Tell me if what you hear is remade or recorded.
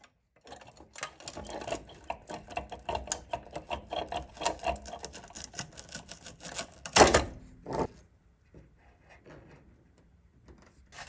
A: recorded